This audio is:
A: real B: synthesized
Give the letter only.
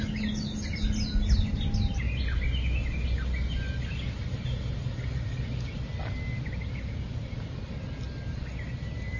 A